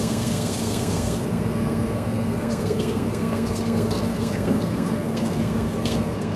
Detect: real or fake fake